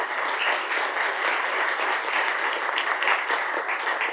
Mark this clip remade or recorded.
recorded